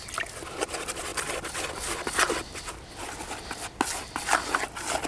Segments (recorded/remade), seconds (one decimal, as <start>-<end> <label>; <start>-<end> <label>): 0.0-5.1 recorded